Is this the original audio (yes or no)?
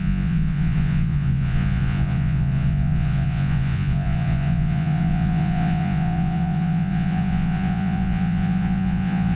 no